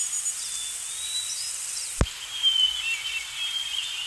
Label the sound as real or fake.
real